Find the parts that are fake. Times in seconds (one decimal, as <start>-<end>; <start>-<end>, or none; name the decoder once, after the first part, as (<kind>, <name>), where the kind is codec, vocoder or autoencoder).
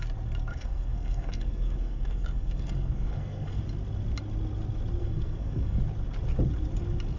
0.5-3.6 (codec, SNAC); 5.0-5.8